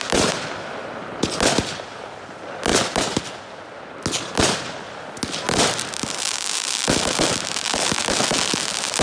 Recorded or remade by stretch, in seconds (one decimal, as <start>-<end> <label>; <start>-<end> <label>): 0.0-9.0 recorded